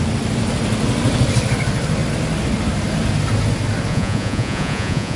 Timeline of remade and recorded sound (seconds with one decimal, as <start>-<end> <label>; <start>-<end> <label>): 0.0-3.9 recorded; 3.9-5.2 remade